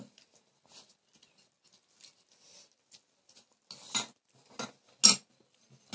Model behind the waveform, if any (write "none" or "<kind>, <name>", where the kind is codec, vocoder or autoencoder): none